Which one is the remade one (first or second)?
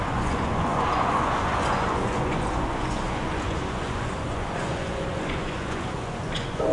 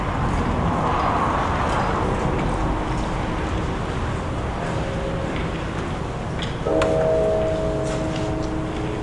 first